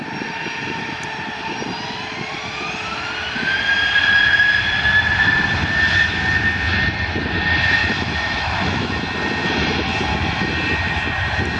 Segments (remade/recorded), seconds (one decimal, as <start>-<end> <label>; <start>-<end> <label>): 0.0-7.8 recorded; 7.8-9.0 remade; 9.0-11.6 recorded